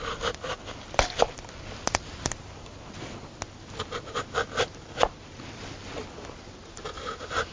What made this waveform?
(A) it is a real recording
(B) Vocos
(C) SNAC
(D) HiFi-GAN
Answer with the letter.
A